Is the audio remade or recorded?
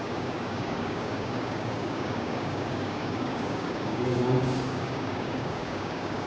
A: remade